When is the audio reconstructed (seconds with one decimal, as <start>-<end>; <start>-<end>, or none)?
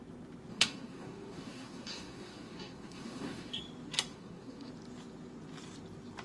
0.5-3.6; 4.1-4.7